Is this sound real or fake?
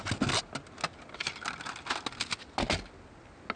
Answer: real